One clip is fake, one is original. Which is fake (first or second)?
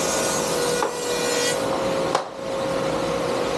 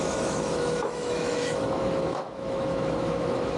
second